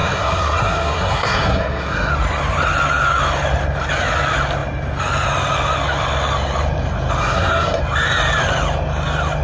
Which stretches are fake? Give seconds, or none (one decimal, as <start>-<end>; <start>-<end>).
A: 0.0-2.1; 7.2-7.8